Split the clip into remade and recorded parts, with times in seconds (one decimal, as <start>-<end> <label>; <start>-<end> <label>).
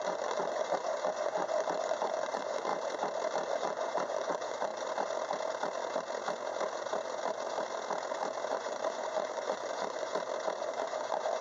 0.0-2.7 remade; 2.7-3.5 recorded; 3.5-4.7 remade; 4.7-8.5 recorded; 8.5-10.1 remade; 10.1-10.7 recorded; 10.7-11.4 remade